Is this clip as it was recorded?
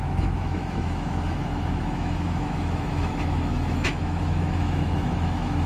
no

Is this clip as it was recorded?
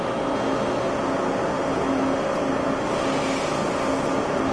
yes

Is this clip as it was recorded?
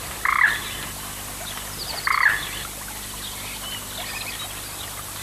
yes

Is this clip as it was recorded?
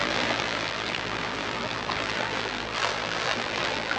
no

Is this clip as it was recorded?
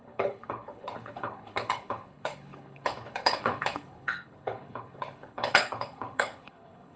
no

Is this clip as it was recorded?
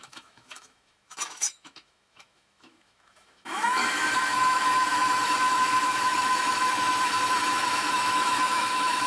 no